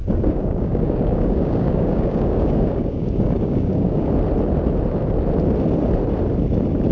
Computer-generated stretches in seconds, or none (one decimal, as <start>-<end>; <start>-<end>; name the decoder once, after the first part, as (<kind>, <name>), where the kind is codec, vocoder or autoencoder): 0.0-4.1 (codec, DAC)

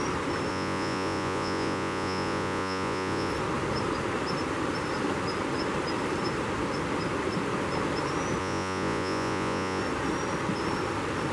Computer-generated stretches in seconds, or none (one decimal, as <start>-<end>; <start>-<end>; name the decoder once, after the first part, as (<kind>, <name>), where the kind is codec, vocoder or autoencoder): 0.5-3.3 (vocoder, Vocos); 8.4-9.8

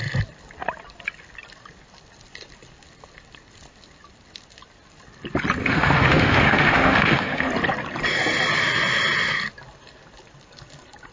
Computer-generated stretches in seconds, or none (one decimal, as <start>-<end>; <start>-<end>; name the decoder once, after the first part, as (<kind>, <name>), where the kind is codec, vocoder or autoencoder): 5.6-7.5 (autoencoder, DAC-VAE)

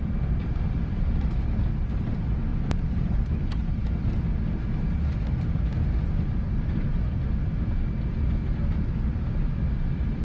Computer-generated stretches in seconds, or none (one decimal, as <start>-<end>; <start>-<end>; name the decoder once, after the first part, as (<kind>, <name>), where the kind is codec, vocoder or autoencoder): 0.0-2.5 (vocoder, BigVGAN v2); 3.5-4.3; 9.4-10.2

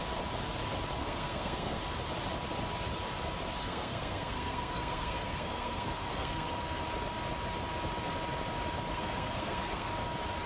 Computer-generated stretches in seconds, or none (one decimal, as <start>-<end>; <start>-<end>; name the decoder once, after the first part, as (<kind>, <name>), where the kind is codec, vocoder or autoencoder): 1.0-1.8 (codec, SNAC); 3.6-6.8; 8.9-9.9

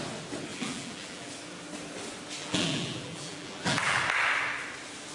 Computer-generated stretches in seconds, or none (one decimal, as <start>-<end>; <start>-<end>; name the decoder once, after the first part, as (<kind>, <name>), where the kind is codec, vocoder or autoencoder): 0.5-1.3 (vocoder, BigVGAN v2); 2.4-4.0